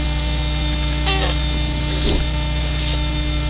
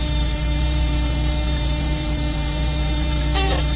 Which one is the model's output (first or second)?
second